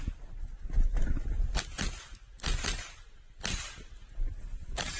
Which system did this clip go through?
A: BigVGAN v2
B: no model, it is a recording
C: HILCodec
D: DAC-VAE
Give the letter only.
B